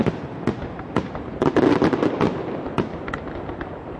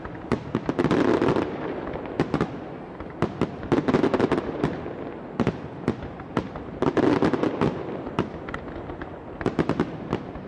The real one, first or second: second